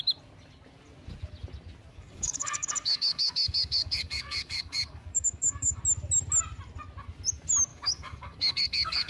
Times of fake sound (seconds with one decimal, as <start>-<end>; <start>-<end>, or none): 1.9-5.8; 7.7-9.1